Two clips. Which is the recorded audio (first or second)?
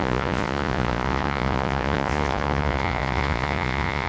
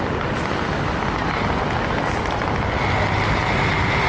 second